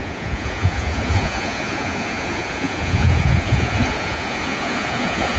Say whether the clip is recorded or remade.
remade